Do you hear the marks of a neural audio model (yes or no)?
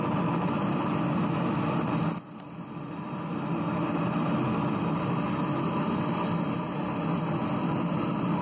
yes